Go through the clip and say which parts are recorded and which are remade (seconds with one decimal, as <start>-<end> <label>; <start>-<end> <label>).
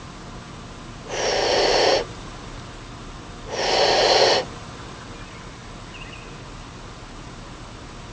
0.0-8.1 recorded